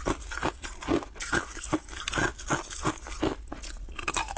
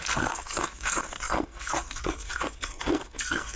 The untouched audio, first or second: first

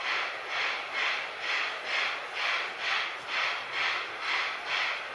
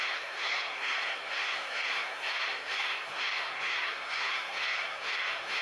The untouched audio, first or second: first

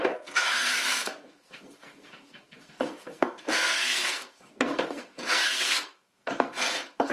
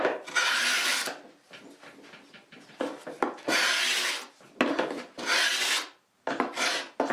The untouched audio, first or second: second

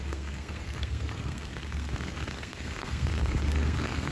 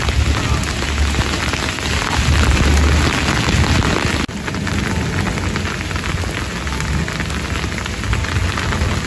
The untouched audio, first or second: second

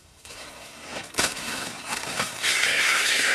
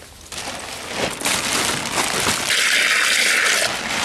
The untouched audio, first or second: second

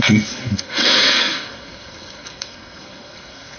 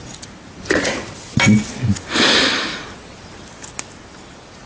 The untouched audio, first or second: second